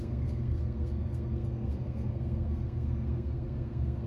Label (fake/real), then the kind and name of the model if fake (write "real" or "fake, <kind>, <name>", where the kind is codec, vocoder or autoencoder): fake, codec, SNAC